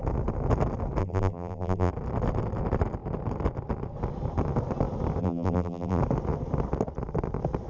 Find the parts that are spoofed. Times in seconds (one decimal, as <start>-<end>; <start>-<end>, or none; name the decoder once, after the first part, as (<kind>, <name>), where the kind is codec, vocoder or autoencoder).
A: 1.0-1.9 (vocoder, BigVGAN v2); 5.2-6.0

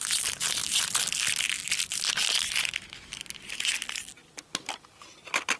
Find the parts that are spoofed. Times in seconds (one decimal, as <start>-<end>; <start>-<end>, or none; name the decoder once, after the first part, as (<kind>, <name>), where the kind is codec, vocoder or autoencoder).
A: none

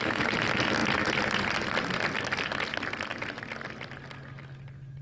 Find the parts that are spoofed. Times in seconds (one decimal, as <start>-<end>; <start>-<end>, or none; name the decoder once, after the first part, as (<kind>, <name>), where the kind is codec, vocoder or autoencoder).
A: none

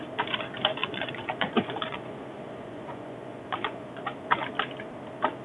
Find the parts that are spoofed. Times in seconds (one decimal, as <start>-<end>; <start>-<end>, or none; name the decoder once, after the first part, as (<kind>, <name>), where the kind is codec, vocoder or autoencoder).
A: 0.8-4.0 (vocoder, Vocos)

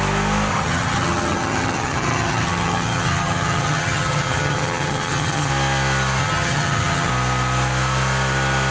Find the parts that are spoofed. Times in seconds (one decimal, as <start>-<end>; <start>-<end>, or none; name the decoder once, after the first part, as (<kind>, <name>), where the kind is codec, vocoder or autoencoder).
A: 0.5-5.5 (vocoder, HiFi-GAN); 6.2-7.1

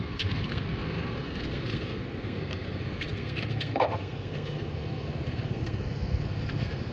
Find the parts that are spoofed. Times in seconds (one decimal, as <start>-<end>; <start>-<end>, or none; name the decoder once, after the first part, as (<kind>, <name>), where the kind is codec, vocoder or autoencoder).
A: 0.0-6.9 (codec, SNAC)

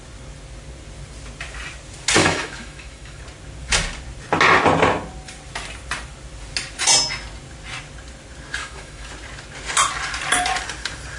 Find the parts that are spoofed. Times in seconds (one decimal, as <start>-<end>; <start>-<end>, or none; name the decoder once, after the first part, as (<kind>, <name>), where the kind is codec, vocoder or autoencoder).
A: 2.2-3.2 (autoencoder, DAC-VAE); 8.6-9.1

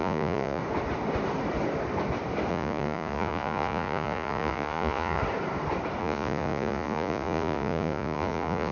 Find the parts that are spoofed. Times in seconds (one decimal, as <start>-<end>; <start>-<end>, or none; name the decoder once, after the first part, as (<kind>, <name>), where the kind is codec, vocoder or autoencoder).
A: 0.0-0.6 (vocoder, Vocos); 2.5-5.2; 6.0-8.7